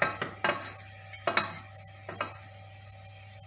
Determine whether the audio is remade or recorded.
recorded